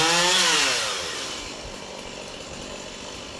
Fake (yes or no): no